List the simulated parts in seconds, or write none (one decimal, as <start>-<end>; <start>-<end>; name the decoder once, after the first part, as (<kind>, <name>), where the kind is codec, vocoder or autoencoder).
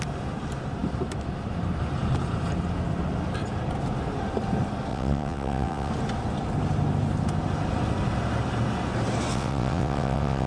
4.9-5.9 (vocoder, WaveNeXt); 9.3-10.5